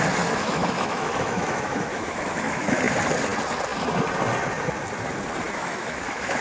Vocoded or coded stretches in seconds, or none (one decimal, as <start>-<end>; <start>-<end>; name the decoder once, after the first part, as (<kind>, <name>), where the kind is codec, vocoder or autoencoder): 0.4-2.8 (autoencoder, DAC-VAE); 5.6-6.4